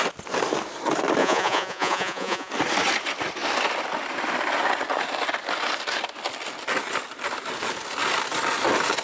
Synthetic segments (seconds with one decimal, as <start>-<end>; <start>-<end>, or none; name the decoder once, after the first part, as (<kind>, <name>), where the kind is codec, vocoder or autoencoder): 1.2-2.5 (vocoder, Vocos)